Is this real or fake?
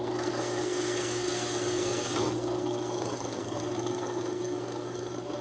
fake